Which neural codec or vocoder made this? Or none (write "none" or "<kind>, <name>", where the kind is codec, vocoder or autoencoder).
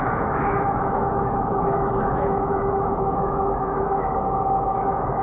autoencoder, DAC-VAE